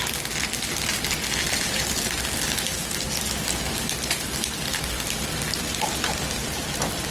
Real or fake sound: real